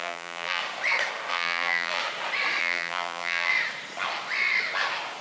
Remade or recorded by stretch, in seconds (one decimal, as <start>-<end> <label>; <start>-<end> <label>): 0.0-0.6 remade; 0.6-1.3 recorded; 1.3-2.0 remade; 2.0-2.6 recorded; 2.6-3.5 remade; 3.5-5.2 recorded